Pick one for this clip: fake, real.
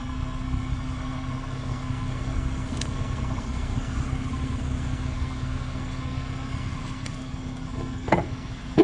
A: fake